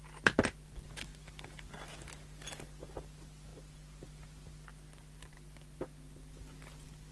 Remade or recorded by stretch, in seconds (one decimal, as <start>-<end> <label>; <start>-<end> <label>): 0.0-7.1 recorded